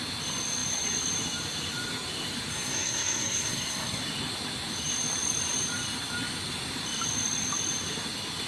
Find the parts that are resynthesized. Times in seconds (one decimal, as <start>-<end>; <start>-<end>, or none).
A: 2.5-4.0